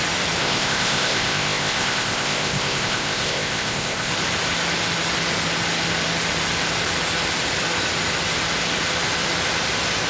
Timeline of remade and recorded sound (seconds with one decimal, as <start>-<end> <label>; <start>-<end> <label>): 0.0-0.4 recorded; 0.4-4.1 remade; 4.1-10.1 recorded